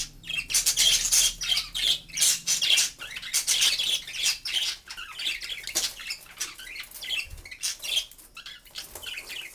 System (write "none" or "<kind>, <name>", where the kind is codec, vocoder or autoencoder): none